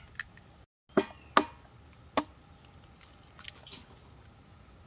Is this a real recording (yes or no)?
yes